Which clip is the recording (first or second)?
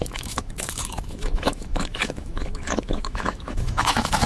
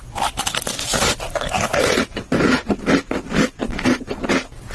second